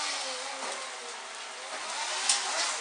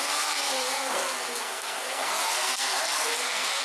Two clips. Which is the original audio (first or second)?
first